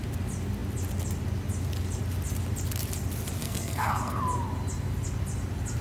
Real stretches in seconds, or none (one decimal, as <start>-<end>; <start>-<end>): 0.0-3.4; 4.2-5.8